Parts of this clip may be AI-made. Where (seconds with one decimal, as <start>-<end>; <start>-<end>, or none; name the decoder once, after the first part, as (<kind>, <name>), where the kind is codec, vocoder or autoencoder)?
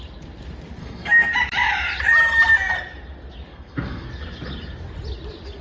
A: 0.8-1.3 (codec, SNAC); 3.5-4.1